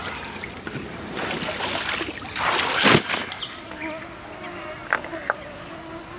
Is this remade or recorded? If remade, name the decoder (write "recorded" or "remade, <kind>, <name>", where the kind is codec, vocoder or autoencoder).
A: recorded